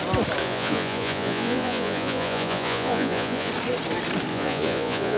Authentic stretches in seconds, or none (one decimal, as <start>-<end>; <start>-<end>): 0.0-0.4; 3.5-4.3